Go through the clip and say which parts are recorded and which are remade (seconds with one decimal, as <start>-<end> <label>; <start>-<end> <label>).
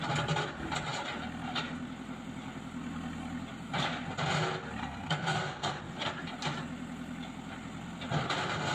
0.0-4.8 recorded; 4.8-5.8 remade; 5.8-8.7 recorded